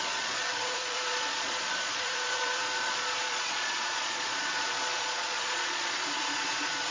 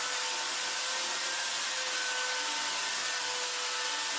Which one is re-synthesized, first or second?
first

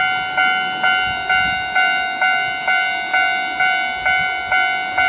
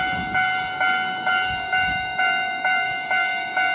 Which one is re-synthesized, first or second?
second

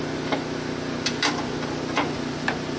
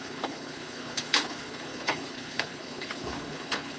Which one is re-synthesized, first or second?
second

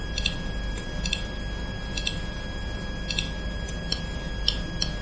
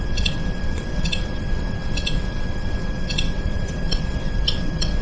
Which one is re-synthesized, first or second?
second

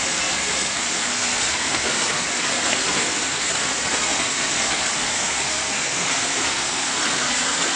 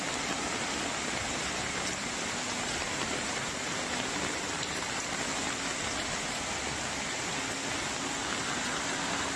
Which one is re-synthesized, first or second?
first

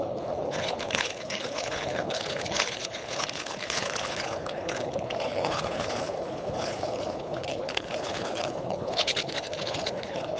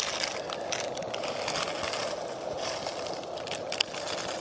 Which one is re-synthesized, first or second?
first